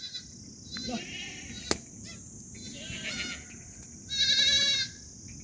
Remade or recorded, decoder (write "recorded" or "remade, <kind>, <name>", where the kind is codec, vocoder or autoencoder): recorded